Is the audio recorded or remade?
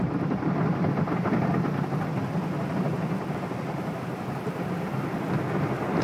recorded